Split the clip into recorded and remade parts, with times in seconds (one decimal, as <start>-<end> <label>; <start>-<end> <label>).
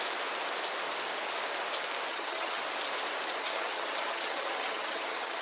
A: 0.0-2.1 recorded; 2.1-2.6 remade; 2.6-3.4 recorded; 3.4-5.4 remade